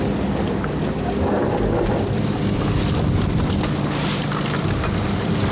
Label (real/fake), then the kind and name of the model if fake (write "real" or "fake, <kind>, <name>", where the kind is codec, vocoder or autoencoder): real